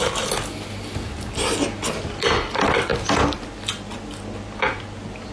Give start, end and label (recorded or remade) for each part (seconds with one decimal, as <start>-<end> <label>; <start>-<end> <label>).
0.0-5.3 recorded